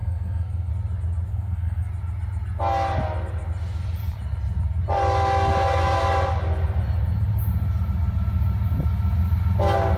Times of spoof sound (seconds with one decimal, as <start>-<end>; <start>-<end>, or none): 0.0-0.7; 1.3-1.9